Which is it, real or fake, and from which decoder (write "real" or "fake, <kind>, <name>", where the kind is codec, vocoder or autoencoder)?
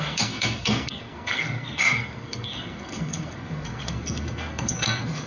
fake, codec, SNAC